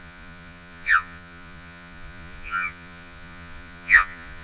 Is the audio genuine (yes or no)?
no